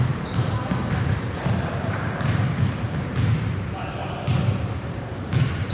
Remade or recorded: remade